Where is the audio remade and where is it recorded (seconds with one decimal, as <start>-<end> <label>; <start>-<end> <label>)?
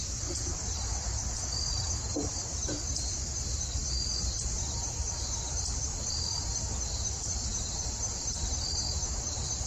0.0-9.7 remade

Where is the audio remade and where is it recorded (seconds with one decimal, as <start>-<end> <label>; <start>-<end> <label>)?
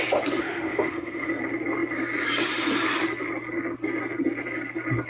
0.0-0.4 recorded; 0.4-1.3 remade; 1.3-5.1 recorded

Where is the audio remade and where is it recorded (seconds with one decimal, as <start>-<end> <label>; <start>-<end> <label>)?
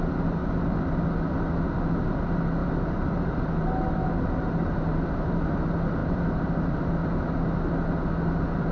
0.0-0.4 recorded; 0.4-0.9 remade; 0.9-2.6 recorded; 2.6-5.3 remade; 5.3-6.0 recorded; 6.0-6.9 remade; 6.9-8.7 recorded